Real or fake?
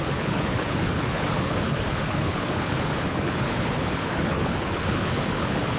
fake